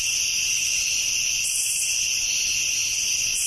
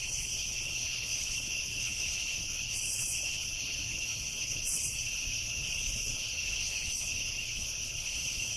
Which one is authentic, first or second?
first